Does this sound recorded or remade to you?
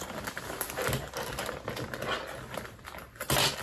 remade